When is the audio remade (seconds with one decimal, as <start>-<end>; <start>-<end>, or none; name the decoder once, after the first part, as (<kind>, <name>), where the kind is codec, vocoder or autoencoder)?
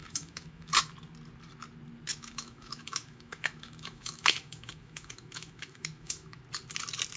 0.0-0.7 (autoencoder, DAC-VAE); 2.1-6.4